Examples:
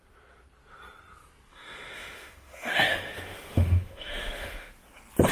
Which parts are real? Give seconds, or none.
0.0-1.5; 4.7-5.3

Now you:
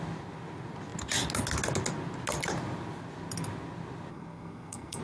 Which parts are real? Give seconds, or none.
0.0-4.1